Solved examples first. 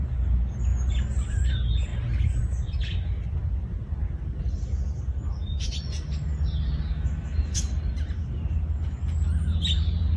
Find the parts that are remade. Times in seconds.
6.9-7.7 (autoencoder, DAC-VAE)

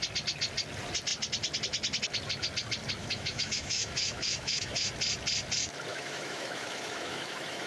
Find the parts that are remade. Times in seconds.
3.0-4.9 (autoencoder, DAC-VAE); 5.9-7.7

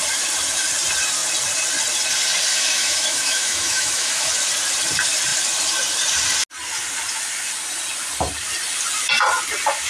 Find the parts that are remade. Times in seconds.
2.5-4.3 (autoencoder, DAC-VAE)

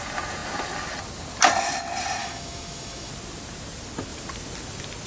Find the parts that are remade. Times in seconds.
2.2-3.1 (autoencoder, DAC-VAE)

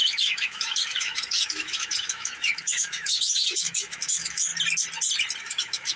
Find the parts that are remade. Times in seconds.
0.0-4.5 (autoencoder, DAC-VAE); 5.4-6.0

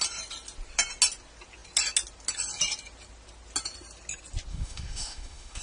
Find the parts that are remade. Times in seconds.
4.5-5.6 (autoencoder, DAC-VAE)

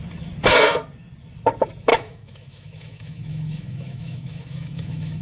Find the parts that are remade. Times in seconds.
1.9-5.2 (autoencoder, DAC-VAE)

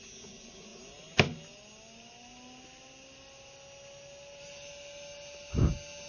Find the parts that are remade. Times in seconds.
none